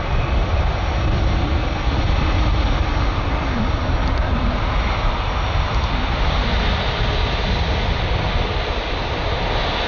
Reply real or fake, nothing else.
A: real